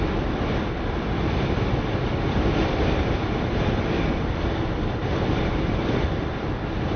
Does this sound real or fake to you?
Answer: fake